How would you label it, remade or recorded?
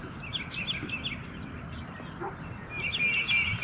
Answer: recorded